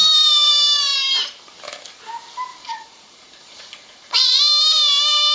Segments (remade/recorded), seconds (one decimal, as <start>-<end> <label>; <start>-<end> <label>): 0.0-2.5 recorded; 2.5-4.4 remade; 4.4-5.3 recorded